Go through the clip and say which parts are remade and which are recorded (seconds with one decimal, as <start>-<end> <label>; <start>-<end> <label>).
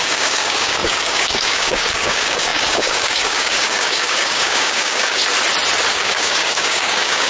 0.0-5.2 remade; 5.2-5.9 recorded; 5.9-7.3 remade